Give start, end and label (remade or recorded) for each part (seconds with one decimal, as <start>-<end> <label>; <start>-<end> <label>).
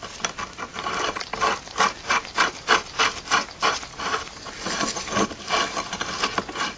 0.0-6.8 recorded